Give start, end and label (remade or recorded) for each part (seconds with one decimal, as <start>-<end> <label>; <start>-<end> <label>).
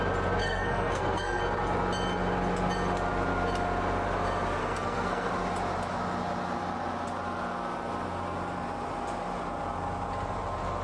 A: 0.0-0.4 recorded; 0.4-1.4 remade; 1.4-4.6 recorded; 4.6-5.3 remade; 5.3-10.8 recorded